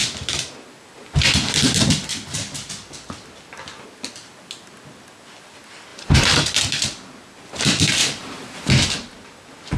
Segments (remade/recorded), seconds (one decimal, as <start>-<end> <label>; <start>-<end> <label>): 0.0-5.9 recorded; 5.9-6.6 remade; 6.6-8.0 recorded; 8.0-8.7 remade; 8.7-9.8 recorded